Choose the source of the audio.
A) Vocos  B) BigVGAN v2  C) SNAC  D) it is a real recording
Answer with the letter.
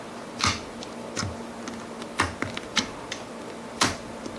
D